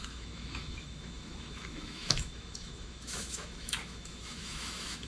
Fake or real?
fake